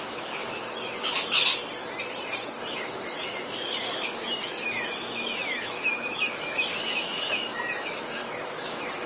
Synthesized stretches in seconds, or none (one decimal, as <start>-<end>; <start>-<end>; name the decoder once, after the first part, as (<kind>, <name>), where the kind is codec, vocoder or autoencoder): 0.0-1.5 (autoencoder, DAC-VAE); 2.6-9.1

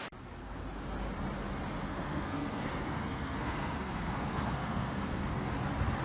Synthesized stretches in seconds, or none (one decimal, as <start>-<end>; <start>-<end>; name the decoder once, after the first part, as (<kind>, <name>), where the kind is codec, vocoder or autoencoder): 1.9-5.5 (codec, SNAC)

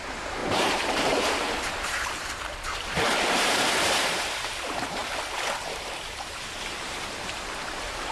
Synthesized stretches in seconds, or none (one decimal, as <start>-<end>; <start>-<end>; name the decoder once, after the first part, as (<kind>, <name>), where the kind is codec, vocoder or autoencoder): 0.0-5.0 (vocoder, BigVGAN v2); 5.6-8.1

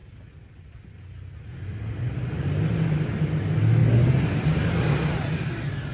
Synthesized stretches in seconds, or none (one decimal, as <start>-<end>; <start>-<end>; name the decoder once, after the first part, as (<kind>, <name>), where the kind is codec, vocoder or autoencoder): none

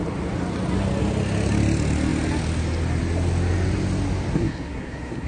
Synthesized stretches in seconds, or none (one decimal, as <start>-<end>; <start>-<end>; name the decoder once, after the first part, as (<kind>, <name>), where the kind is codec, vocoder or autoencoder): 4.3-5.3 (codec, SNAC)

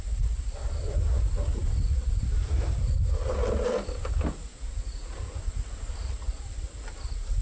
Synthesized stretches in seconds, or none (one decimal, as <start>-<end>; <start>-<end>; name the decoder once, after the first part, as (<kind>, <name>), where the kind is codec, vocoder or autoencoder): 4.5-5.5 (vocoder, Vocos)